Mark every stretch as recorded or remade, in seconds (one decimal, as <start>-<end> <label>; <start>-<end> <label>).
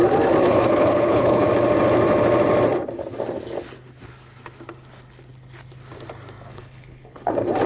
0.0-0.4 recorded; 0.4-1.5 remade; 1.5-6.5 recorded; 6.5-7.3 remade; 7.3-7.7 recorded